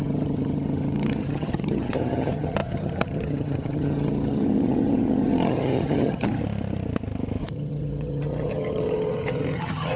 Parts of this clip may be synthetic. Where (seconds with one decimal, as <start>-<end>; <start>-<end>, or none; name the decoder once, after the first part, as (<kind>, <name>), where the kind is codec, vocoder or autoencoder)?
0.0-6.4 (vocoder, HiFi-GAN); 7.4-10.0